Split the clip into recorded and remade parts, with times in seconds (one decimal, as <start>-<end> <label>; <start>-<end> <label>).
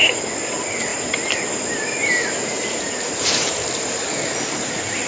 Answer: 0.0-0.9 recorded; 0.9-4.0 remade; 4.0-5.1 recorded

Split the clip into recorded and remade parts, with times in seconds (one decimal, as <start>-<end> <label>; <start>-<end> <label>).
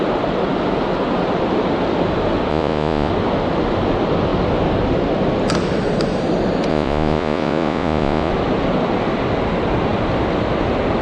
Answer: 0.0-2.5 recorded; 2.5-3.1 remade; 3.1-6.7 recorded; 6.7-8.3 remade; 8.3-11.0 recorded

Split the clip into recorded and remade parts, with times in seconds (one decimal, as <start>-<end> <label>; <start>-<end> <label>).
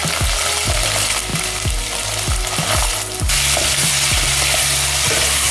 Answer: 0.0-5.5 recorded